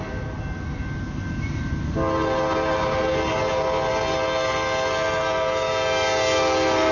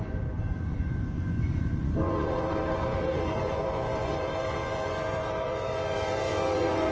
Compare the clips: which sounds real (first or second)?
first